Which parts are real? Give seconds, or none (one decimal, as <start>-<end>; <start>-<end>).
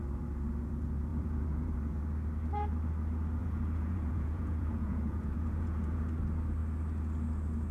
0.0-1.1; 2.0-3.4; 6.0-7.7